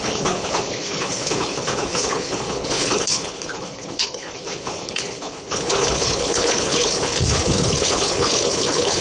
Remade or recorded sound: remade